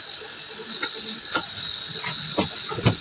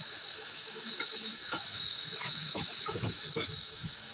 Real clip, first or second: first